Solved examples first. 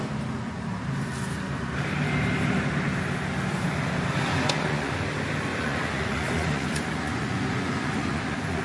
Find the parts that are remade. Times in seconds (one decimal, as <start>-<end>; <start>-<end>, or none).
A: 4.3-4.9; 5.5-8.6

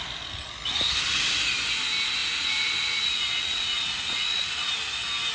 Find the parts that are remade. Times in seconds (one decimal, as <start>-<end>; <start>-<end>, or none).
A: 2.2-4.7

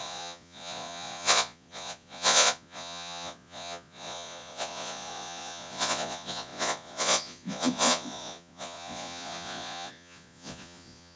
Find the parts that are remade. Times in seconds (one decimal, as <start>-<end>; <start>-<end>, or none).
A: 0.0-11.2

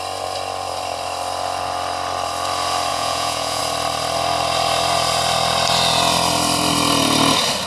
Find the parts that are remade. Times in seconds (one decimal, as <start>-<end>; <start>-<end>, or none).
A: 2.9-3.6

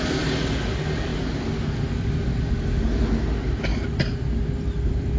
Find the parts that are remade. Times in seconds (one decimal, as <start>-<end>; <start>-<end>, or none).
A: none

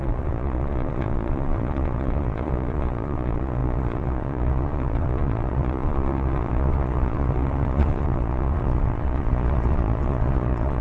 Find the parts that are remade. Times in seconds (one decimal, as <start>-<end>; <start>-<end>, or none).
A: 0.0-10.8

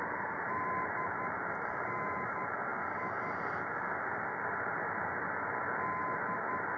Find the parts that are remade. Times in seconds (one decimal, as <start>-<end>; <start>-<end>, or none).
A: none

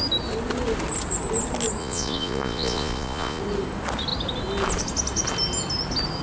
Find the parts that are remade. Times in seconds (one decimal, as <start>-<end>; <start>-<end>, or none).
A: 1.8-3.4